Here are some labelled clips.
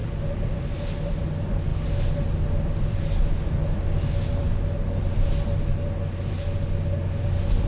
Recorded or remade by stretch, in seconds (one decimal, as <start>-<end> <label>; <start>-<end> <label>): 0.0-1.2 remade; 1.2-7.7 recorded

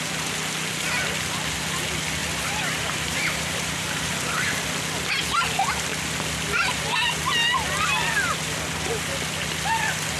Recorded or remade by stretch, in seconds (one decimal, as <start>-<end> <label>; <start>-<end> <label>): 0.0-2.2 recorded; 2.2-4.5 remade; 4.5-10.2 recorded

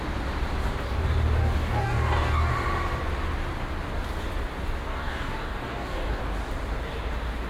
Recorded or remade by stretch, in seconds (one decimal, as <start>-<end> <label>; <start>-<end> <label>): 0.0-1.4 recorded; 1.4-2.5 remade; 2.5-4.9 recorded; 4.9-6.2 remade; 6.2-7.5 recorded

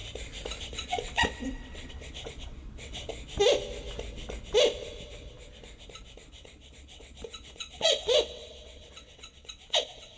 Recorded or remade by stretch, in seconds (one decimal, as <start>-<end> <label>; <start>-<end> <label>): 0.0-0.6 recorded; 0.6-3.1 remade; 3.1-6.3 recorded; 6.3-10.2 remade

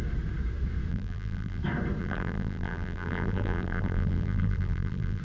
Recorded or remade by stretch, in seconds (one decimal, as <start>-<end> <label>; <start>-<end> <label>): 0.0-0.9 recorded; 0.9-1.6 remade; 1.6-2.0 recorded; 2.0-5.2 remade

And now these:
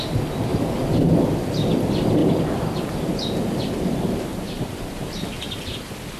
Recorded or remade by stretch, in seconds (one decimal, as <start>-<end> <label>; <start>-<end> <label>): 0.0-0.5 recorded; 0.5-1.1 remade; 1.1-2.2 recorded; 2.2-2.8 remade; 2.8-4.3 recorded; 4.3-5.2 remade; 5.2-6.2 recorded

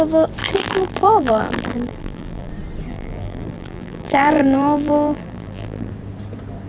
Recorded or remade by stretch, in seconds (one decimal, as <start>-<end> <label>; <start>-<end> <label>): 0.0-0.4 recorded; 0.4-2.5 remade; 2.5-2.9 recorded; 2.9-5.9 remade; 5.9-6.7 recorded

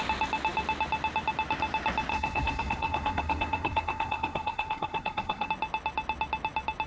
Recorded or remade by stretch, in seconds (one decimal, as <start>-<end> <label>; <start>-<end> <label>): 0.0-2.1 recorded; 2.1-5.5 remade; 5.5-6.9 recorded